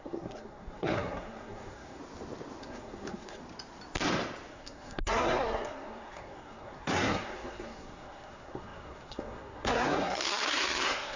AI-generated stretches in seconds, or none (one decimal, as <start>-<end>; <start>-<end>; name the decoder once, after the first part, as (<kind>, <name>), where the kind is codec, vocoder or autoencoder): 0.0-2.0 (codec, SNAC); 2.6-3.4; 4.5-11.2